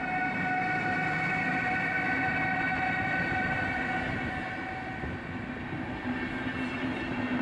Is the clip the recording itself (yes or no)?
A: yes